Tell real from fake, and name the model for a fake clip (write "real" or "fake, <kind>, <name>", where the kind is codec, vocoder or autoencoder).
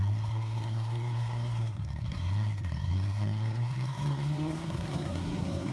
fake, codec, SNAC